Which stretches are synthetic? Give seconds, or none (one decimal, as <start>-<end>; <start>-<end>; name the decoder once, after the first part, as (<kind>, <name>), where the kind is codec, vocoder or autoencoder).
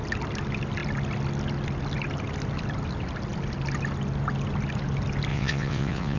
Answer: 5.3-6.2 (vocoder, WaveNeXt)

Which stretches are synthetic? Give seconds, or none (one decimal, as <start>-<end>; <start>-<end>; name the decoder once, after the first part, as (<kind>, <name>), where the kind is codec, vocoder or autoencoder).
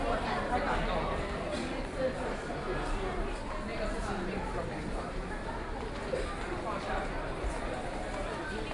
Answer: 3.7-5.3 (vocoder, BigVGAN v2)